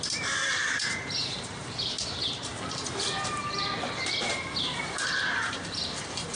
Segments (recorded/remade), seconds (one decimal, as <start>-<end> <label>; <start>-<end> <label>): 0.0-3.4 remade; 3.4-4.2 recorded; 4.2-6.4 remade